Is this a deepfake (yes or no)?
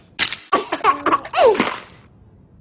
no